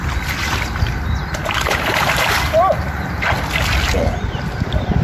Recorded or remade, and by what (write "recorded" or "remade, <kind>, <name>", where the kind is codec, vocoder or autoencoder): recorded